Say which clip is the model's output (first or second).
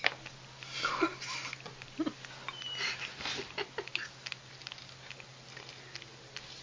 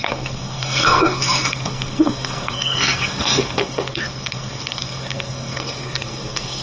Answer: second